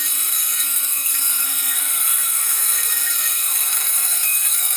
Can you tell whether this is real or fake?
fake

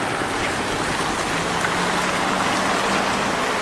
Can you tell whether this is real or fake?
real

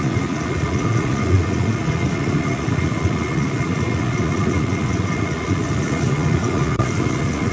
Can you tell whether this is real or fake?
fake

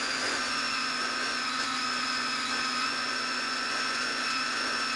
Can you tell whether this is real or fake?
fake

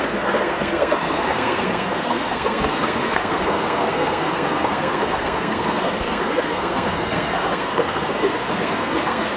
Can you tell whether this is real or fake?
fake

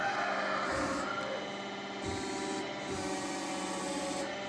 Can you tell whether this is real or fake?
real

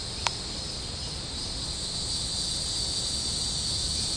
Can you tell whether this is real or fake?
real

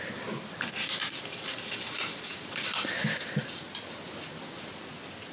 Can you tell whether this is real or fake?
real